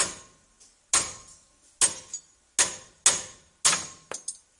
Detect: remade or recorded recorded